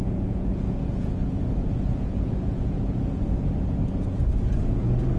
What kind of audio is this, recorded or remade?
remade